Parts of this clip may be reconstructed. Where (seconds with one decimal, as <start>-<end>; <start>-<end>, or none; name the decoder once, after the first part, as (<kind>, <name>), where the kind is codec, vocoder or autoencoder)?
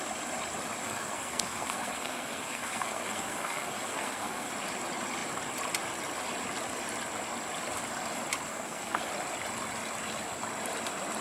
0.8-4.5 (codec, SNAC); 8.5-9.1